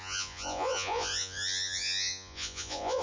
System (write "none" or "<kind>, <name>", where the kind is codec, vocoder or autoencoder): vocoder, Vocos